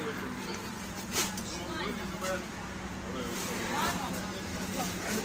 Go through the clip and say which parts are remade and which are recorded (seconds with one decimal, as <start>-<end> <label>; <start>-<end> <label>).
0.0-1.2 recorded; 1.2-3.1 remade; 3.1-4.5 recorded; 4.5-5.2 remade